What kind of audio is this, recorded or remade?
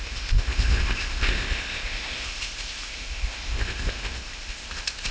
remade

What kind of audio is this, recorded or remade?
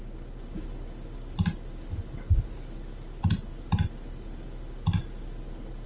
recorded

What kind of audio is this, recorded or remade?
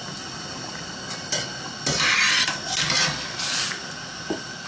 recorded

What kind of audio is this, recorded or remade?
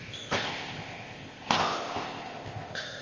remade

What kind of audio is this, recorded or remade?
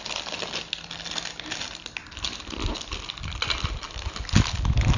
recorded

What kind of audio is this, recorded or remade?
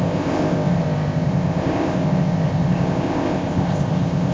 remade